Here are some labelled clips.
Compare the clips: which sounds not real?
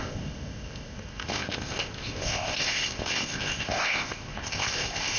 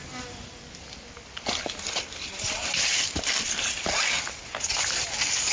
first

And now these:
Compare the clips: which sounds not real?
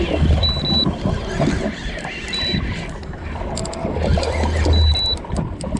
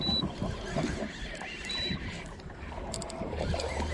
second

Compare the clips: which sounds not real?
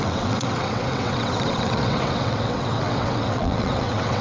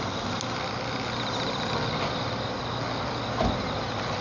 first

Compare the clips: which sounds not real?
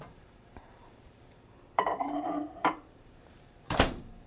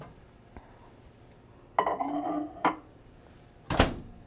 first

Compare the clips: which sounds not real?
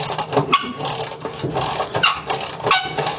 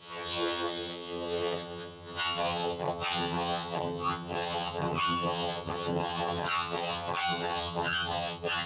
second